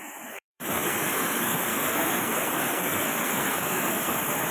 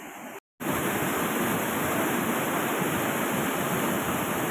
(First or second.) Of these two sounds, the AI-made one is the first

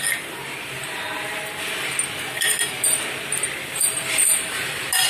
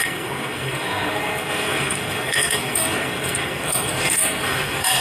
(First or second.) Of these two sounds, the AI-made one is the second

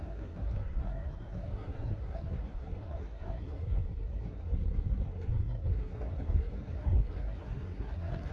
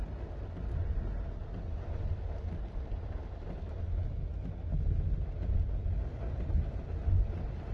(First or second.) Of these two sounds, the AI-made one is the first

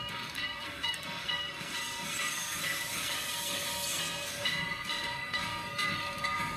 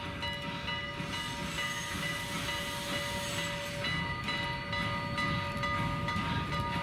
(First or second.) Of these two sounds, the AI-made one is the first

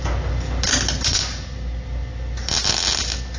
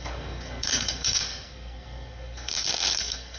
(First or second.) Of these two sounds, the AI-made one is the second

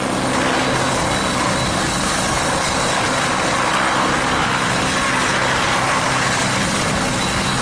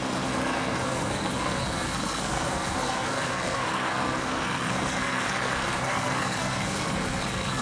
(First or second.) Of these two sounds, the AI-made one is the second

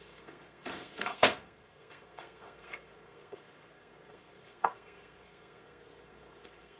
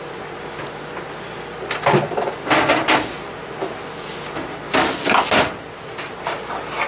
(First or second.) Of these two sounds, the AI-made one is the first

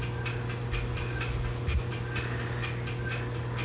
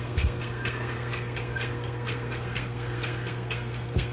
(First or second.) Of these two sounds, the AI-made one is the second